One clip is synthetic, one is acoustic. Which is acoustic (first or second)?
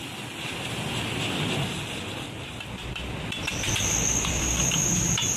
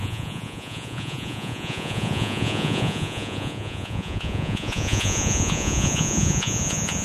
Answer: first